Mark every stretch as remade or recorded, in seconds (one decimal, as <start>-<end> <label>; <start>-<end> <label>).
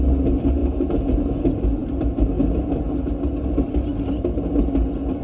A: 0.0-5.2 recorded